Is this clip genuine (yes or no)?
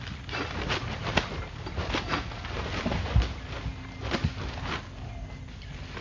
yes